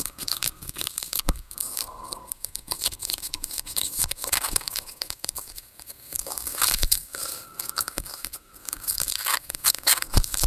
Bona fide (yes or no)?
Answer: no